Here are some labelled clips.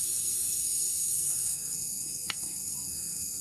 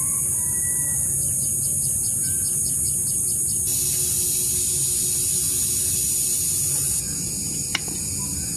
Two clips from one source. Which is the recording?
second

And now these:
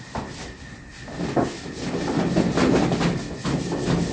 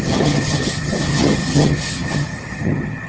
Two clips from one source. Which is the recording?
first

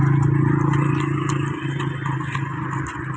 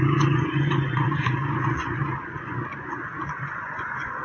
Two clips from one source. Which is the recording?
first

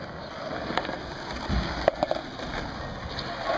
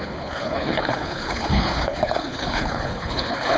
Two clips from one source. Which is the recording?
first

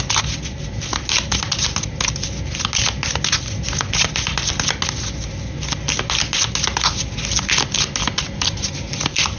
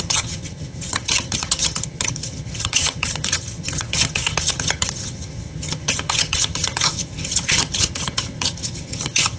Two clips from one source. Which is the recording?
first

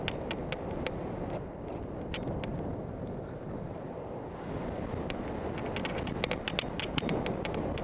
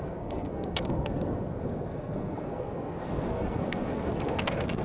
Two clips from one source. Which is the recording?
first